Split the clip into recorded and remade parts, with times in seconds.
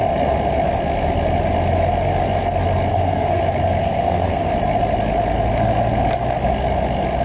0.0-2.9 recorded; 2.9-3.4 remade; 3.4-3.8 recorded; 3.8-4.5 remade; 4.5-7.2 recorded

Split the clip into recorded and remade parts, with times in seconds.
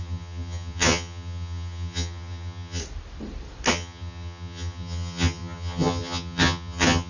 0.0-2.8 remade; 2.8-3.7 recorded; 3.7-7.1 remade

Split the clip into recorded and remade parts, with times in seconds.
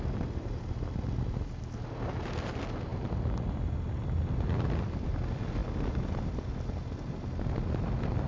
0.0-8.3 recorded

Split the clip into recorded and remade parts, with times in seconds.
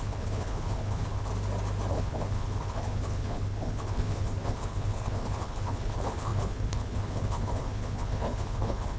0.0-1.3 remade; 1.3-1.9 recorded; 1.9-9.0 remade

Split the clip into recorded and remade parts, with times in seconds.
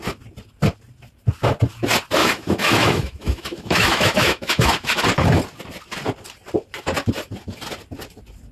0.0-2.2 recorded; 2.2-5.0 remade; 5.0-8.5 recorded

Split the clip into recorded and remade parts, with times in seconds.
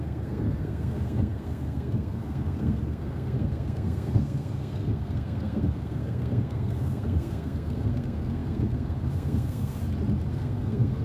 0.0-9.8 remade; 9.8-10.3 recorded; 10.3-11.0 remade